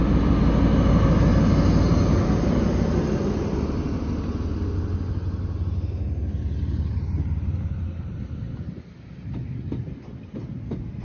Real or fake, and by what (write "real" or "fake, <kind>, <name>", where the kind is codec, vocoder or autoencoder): real